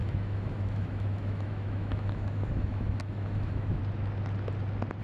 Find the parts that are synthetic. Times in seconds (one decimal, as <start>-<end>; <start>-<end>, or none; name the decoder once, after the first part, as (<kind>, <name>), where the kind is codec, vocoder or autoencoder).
0.0-3.8 (autoencoder, DAC-VAE)

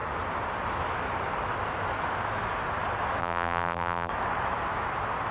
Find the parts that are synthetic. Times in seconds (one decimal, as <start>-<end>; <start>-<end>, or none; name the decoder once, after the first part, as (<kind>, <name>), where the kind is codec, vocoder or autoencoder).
3.2-4.1 (vocoder, BigVGAN v2)